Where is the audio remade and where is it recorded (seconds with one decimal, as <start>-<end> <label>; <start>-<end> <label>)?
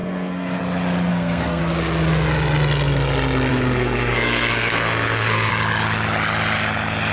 0.0-0.6 remade; 0.6-1.1 recorded; 1.1-1.6 remade; 1.6-3.5 recorded; 3.5-5.5 remade; 5.5-7.1 recorded